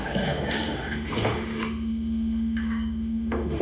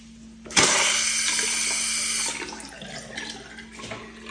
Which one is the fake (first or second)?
first